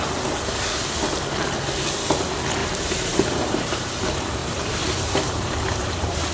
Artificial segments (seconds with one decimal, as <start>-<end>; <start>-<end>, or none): 2.6-3.9; 4.4-6.3